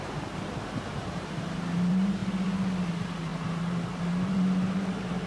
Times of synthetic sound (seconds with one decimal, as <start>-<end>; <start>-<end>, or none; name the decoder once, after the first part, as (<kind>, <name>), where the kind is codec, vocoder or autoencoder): 0.0-2.2 (vocoder, BigVGAN v2); 2.9-5.3